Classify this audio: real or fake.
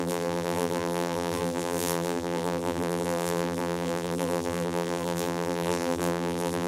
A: fake